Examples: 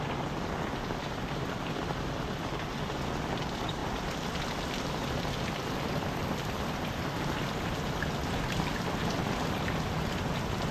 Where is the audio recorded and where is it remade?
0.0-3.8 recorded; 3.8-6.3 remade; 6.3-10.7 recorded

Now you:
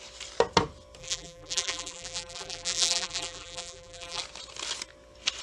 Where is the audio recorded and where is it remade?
0.0-1.0 recorded; 1.0-4.2 remade; 4.2-5.4 recorded

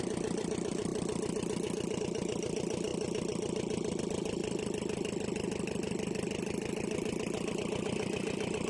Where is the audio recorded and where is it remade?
0.0-0.9 remade; 0.9-2.0 recorded; 2.0-2.9 remade; 2.9-4.0 recorded; 4.0-4.4 remade; 4.4-7.5 recorded; 7.5-8.7 remade